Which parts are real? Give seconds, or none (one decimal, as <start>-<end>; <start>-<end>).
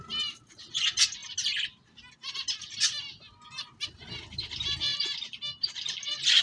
0.0-6.4